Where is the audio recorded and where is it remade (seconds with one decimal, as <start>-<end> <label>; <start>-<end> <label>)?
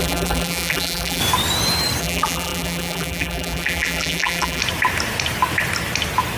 0.0-1.2 remade; 1.2-2.0 recorded; 2.0-4.6 remade; 4.6-6.4 recorded